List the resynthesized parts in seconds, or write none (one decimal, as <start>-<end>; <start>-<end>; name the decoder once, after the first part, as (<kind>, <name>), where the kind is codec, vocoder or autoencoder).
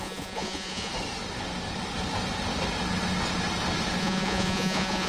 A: 0.0-0.9 (vocoder, Vocos); 4.0-5.1